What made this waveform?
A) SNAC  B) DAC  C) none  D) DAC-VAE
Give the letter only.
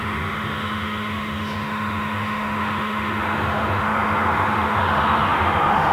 D